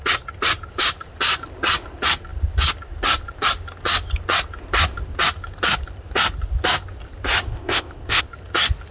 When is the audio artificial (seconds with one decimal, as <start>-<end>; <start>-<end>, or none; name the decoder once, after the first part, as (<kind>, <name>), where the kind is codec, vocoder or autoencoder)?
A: 7.5-8.2 (codec, ZipCodec)